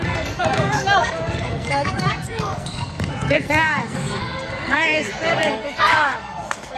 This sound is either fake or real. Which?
fake